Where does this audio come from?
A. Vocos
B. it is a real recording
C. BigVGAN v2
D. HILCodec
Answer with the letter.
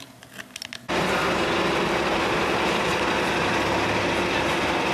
B